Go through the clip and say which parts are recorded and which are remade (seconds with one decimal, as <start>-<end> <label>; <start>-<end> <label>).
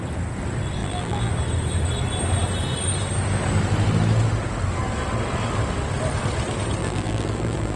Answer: 0.0-0.8 recorded; 0.8-1.3 remade; 1.3-6.8 recorded; 6.8-7.8 remade